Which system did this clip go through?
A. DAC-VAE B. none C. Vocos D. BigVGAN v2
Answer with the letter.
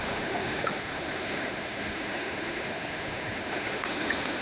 A